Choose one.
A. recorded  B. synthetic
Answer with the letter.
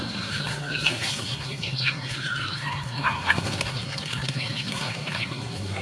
B